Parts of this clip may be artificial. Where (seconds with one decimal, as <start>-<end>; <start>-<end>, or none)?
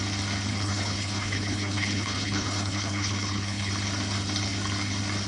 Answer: 0.5-3.7